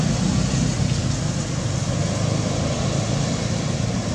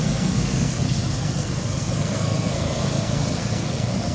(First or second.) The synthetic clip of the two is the second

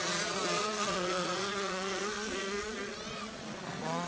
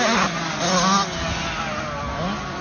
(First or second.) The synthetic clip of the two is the first